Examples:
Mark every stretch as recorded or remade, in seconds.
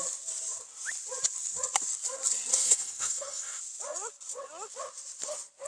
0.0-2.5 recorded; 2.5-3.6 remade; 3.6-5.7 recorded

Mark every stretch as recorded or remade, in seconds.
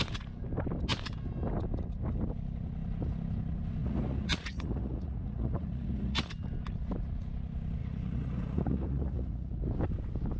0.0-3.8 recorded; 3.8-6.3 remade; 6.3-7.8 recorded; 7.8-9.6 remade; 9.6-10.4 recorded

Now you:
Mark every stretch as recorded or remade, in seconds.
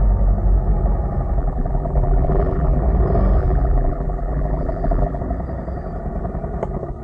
0.0-1.4 recorded; 1.4-2.8 remade; 2.8-3.4 recorded; 3.4-5.2 remade; 5.2-7.0 recorded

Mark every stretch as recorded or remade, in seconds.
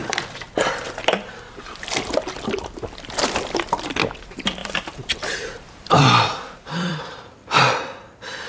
0.0-4.6 recorded; 4.6-7.6 remade; 7.6-8.5 recorded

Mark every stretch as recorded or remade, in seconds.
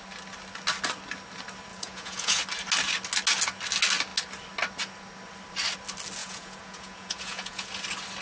0.0-1.7 recorded; 1.7-2.4 remade; 2.4-6.2 recorded; 6.2-7.7 remade; 7.7-8.2 recorded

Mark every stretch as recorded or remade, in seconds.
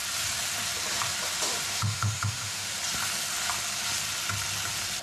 0.0-1.7 recorded; 1.7-2.7 remade; 2.7-5.0 recorded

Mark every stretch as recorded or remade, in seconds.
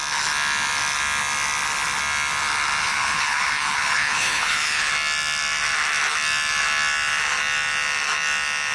0.0-2.8 recorded; 2.8-4.9 remade; 4.9-8.7 recorded